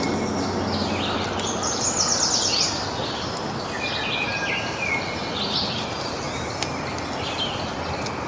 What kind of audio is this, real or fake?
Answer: real